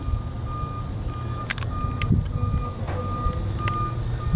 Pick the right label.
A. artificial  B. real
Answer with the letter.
B